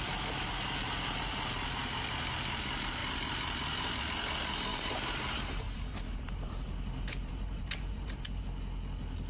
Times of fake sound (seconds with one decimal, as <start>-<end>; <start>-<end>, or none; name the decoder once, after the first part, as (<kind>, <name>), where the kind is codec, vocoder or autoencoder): 4.7-8.4 (vocoder, BigVGAN v2)